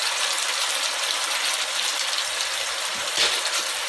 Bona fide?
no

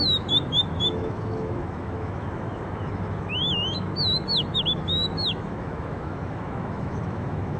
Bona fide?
no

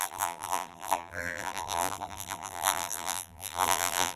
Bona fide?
no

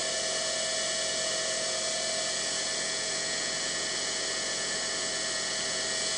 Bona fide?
yes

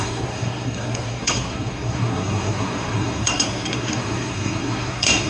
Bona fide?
no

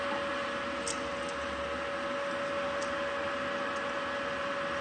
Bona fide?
yes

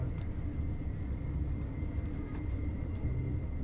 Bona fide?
yes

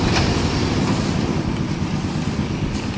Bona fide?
yes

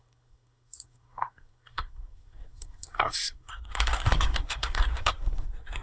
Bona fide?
no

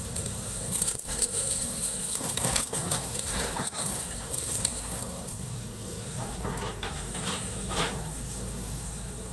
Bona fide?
no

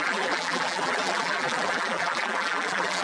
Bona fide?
no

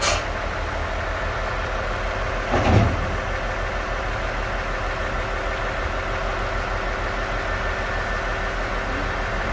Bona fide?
yes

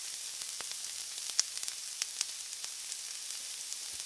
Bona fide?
yes